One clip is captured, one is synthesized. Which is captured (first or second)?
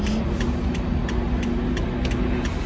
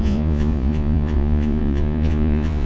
first